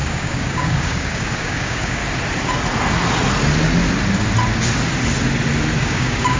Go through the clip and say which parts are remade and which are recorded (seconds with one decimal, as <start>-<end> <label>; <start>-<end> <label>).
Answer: 0.0-2.0 remade; 2.0-5.8 recorded; 5.8-6.4 remade